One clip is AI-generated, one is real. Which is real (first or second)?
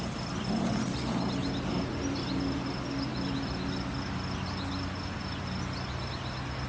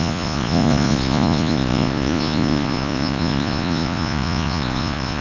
first